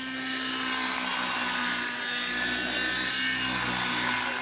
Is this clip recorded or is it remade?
recorded